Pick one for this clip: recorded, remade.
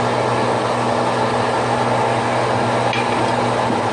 recorded